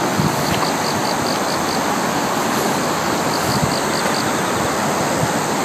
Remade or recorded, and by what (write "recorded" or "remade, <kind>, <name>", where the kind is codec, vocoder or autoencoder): recorded